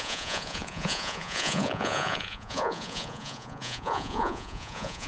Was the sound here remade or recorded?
remade